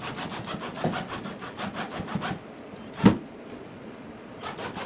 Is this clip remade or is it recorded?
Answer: recorded